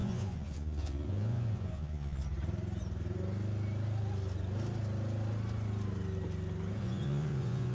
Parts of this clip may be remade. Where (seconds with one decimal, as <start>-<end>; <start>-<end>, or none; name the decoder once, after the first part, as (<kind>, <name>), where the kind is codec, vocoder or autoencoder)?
0.0-2.2 (vocoder, Vocos); 6.8-7.7